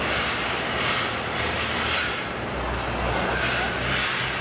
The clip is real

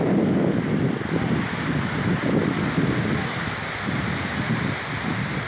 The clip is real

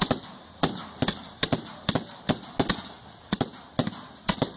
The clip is real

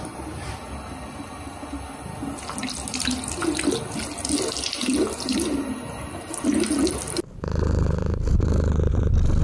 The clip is real